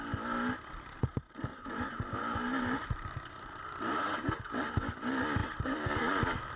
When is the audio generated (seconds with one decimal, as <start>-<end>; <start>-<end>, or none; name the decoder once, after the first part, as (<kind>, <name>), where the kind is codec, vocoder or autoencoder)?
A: 1.5-3.6 (vocoder, BigVGAN v2); 5.4-6.0